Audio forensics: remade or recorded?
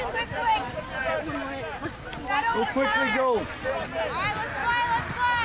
recorded